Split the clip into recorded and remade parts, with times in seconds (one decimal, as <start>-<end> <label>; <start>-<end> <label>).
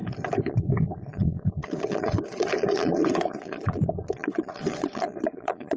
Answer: 0.0-0.5 recorded; 0.5-5.8 remade